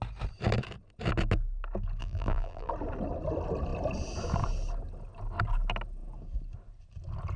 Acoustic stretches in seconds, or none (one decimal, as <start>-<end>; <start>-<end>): 0.0-2.0; 2.7-7.4